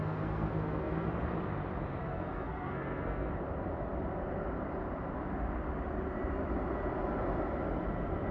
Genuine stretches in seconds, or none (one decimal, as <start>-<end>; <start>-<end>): 1.1-2.0; 3.3-8.3

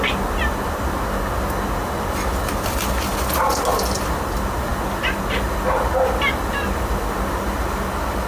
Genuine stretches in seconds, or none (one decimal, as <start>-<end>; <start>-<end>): 0.0-8.3

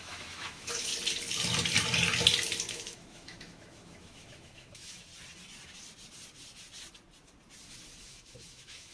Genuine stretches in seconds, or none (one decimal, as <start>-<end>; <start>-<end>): 0.9-2.7; 5.1-8.0

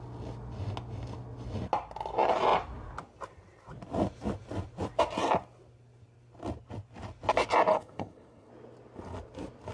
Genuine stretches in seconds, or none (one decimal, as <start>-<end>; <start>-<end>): 0.0-7.7; 8.5-9.7

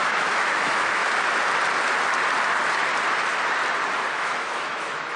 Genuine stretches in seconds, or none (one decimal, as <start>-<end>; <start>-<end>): 1.0-4.1